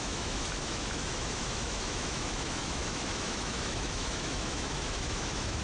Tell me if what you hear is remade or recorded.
remade